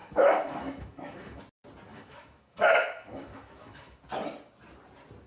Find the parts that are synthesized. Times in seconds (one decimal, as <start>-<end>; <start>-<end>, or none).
0.0-1.4; 1.9-4.0